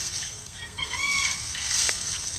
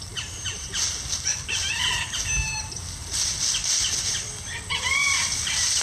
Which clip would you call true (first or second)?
second